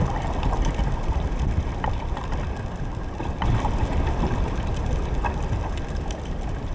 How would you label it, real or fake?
real